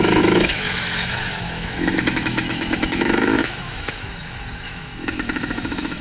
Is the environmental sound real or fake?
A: fake